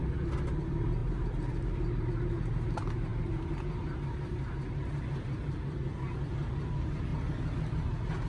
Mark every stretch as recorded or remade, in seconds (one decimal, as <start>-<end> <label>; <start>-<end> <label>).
0.0-7.1 remade; 7.1-8.3 recorded